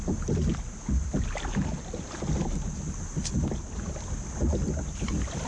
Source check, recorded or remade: recorded